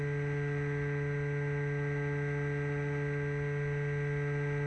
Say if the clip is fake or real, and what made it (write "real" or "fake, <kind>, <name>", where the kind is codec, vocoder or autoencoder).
real